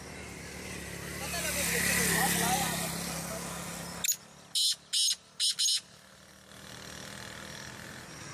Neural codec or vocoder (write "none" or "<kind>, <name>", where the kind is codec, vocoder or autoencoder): none